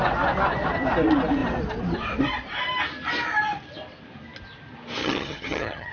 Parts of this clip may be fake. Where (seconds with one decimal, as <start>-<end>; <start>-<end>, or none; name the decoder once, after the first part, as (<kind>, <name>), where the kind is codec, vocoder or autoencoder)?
5.0-5.9 (vocoder, HiFi-GAN)